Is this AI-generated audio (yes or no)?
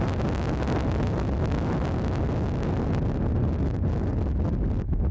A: no